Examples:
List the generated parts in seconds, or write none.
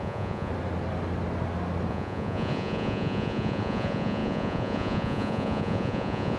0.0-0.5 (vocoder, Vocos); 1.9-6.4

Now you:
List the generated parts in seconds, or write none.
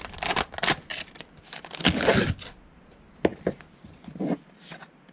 none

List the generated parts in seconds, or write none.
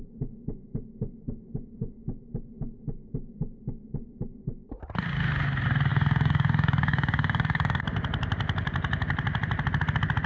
5.9-8.0 (codec, DAC)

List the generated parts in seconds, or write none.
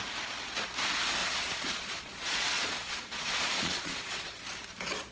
1.2-4.3 (vocoder, Vocos)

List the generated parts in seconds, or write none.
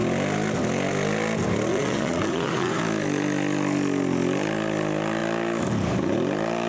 1.7-2.8 (vocoder, Vocos)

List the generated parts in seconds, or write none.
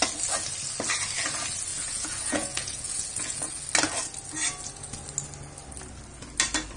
1.7-3.6 (vocoder, Vocos)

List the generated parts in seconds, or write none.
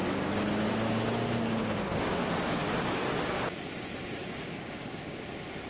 1.9-3.4 (codec, DAC); 4.2-5.2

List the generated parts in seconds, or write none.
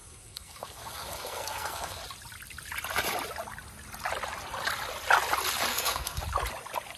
0.0-2.0 (codec, SNAC); 5.7-6.2